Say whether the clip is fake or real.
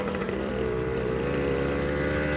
fake